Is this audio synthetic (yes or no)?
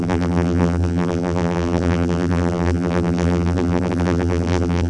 yes